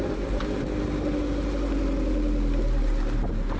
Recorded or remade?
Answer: recorded